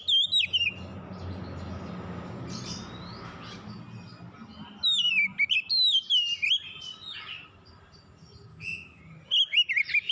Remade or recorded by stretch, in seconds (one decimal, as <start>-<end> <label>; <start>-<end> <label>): 0.0-8.5 recorded; 8.5-9.0 remade; 9.0-10.1 recorded